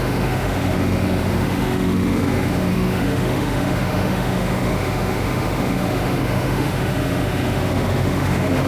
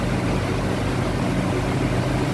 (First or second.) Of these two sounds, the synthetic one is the first